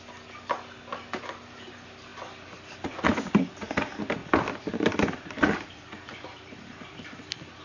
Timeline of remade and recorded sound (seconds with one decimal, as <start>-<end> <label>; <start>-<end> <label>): 0.0-4.2 recorded; 4.2-7.6 remade

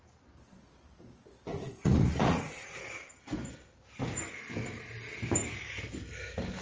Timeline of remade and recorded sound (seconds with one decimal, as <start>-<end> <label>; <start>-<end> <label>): 0.0-1.5 recorded; 1.5-2.7 remade; 2.7-6.6 recorded

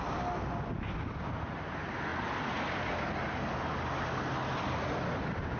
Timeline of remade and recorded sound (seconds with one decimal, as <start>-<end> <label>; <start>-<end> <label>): 0.0-5.6 recorded

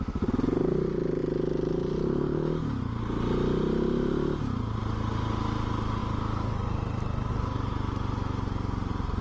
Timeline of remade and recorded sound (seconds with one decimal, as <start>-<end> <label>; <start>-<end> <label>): 0.0-9.2 recorded

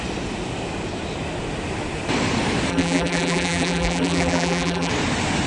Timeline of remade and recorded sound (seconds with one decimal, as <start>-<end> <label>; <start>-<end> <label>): 0.0-2.7 recorded; 2.7-4.9 remade; 4.9-5.5 recorded

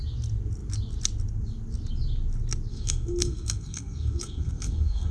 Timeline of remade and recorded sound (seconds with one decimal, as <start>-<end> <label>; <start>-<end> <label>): 0.0-2.7 recorded; 2.7-5.1 remade

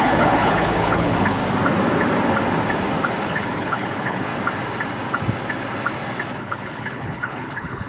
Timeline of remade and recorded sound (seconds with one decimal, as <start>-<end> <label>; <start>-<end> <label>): 0.0-1.4 remade; 1.4-3.2 recorded; 3.2-4.3 remade; 4.3-6.4 recorded; 6.4-7.9 remade

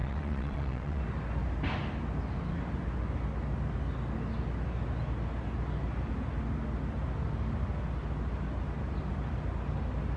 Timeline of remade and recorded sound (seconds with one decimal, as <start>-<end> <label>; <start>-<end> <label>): 0.0-1.0 remade; 1.0-10.2 recorded